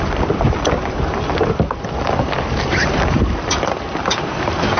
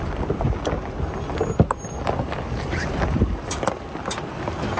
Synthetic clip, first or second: first